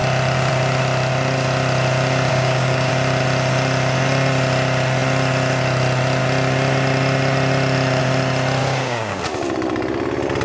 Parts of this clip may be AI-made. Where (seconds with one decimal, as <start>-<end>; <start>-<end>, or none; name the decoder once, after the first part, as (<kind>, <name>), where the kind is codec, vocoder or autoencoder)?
2.3-2.9 (codec, DAC); 8.6-9.2